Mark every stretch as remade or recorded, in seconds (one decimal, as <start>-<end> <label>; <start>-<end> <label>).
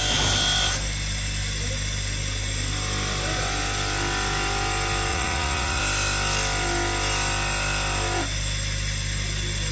0.0-5.1 recorded; 5.1-5.8 remade; 5.8-9.7 recorded